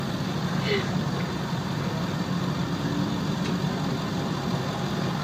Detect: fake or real real